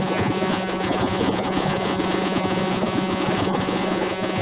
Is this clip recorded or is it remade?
remade